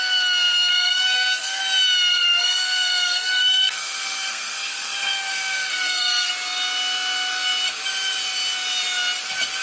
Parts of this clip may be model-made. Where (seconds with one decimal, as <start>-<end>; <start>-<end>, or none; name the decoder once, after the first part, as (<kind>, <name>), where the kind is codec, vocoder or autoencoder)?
0.7-1.6 (codec, SNAC); 2.1-6.3